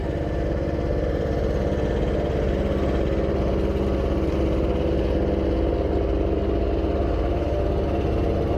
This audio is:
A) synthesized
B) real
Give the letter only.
B